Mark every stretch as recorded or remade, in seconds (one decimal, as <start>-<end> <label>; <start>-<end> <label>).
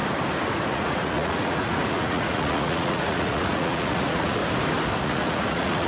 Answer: 0.0-0.7 recorded; 0.7-4.4 remade; 4.4-5.0 recorded; 5.0-5.9 remade